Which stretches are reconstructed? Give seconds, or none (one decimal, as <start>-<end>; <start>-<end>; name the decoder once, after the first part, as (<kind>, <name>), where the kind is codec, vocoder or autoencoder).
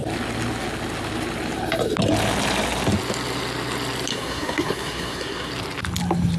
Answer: 4.1-5.5 (codec, SNAC)